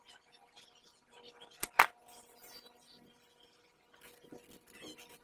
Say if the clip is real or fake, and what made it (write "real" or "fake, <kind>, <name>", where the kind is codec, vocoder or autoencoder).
real